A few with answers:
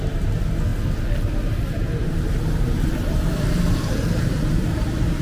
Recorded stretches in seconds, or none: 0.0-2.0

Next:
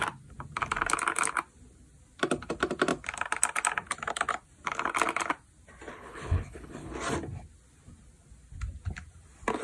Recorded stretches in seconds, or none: 0.0-5.9; 6.9-9.6

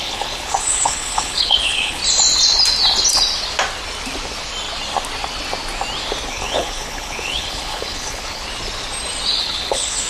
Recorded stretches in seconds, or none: 2.0-6.3; 8.4-9.4

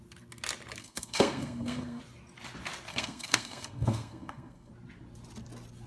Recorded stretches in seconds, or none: 0.0-0.8; 2.0-2.9; 4.7-5.9

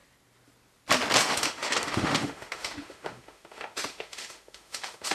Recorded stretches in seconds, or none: 0.0-1.2

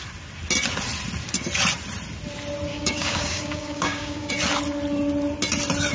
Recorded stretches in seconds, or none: 0.0-2.7; 4.3-5.9